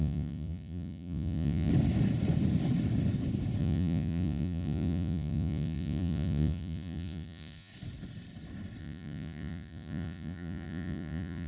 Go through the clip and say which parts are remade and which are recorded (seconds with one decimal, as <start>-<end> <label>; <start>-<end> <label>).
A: 0.0-1.7 remade; 1.7-3.6 recorded; 3.6-7.7 remade; 7.7-8.8 recorded; 8.8-11.5 remade